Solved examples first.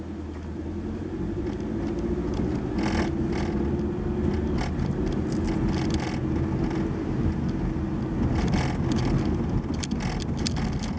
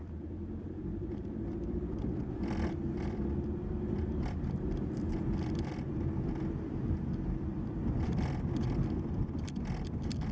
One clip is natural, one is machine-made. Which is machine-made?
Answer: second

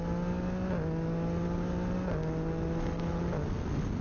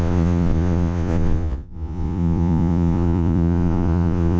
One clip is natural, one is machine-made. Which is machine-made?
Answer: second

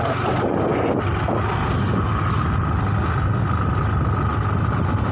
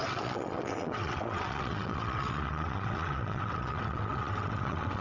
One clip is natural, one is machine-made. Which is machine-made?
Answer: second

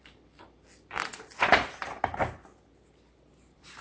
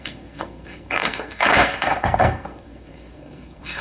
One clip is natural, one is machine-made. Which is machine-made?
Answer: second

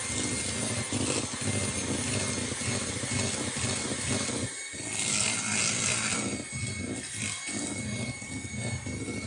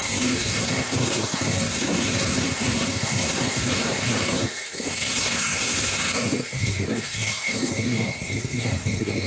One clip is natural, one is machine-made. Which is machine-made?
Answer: second